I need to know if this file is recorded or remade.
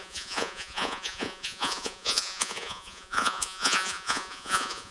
remade